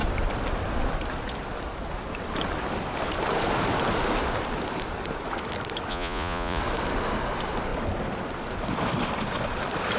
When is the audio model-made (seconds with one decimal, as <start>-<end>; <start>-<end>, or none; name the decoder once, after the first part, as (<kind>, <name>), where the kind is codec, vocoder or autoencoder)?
5.9-6.6 (vocoder, Vocos)